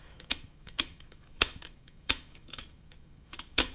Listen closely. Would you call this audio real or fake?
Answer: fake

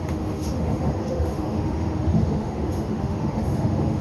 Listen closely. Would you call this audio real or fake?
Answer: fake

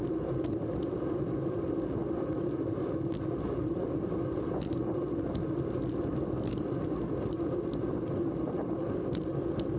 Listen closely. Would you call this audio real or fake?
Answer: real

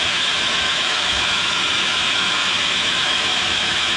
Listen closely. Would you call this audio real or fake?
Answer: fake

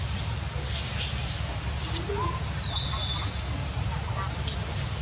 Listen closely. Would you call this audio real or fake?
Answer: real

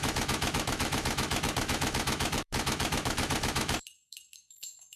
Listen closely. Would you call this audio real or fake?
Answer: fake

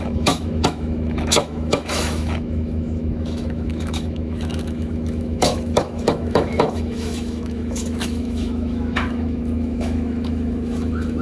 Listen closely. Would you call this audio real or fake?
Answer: fake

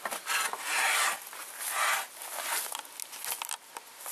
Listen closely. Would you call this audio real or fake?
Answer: real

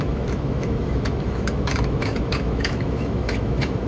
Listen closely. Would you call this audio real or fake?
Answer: fake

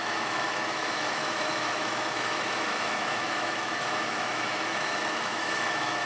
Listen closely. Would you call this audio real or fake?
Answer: fake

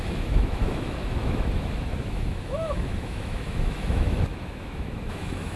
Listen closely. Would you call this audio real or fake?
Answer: fake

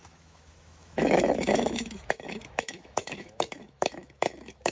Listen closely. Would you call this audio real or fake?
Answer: fake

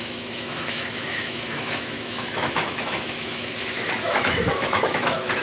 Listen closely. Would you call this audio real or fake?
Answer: fake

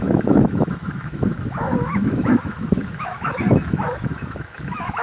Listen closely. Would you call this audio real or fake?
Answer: fake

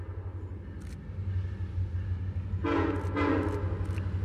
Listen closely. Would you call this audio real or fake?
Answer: real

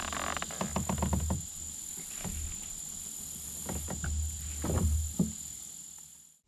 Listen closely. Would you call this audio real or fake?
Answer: real